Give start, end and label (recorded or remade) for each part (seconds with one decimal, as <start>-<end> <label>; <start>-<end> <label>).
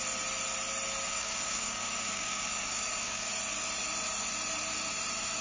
0.0-1.1 recorded; 1.1-3.3 remade; 3.3-5.4 recorded